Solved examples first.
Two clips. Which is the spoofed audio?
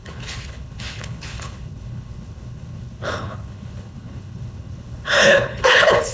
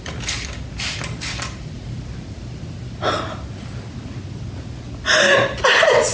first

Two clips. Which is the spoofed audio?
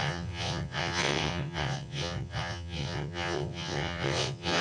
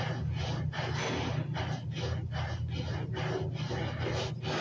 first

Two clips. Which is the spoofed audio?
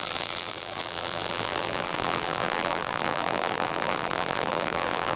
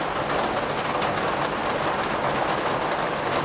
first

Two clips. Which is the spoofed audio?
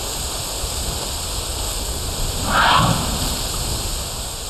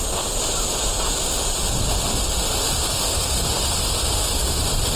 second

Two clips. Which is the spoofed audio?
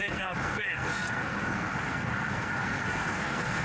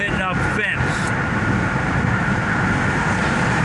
first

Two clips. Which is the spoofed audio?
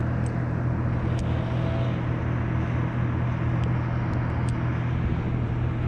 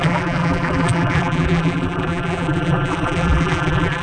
second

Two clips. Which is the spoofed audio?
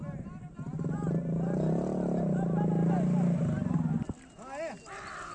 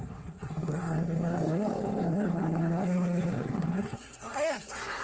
second